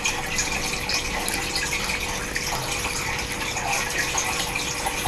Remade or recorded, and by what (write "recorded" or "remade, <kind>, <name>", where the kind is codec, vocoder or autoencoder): recorded